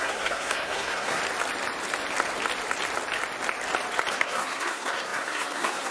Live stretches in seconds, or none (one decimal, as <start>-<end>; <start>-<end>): 1.2-4.1